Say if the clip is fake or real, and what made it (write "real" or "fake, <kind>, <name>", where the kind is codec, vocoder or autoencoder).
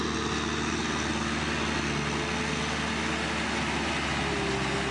real